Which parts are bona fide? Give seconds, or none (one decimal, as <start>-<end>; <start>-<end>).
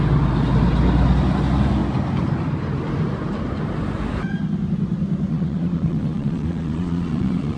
0.0-5.3